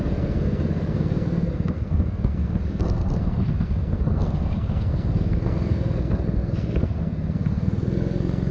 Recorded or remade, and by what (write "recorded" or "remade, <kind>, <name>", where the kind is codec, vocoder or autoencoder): remade, codec, SNAC